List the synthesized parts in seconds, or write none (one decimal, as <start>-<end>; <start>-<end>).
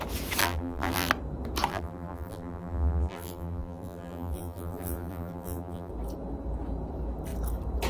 0.4-1.1; 1.7-5.9